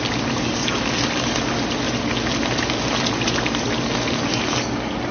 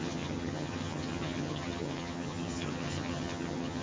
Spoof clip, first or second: second